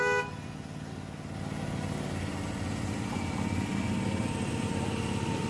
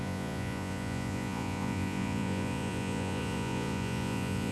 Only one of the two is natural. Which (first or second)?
first